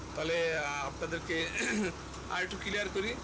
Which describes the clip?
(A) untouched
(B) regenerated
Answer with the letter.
A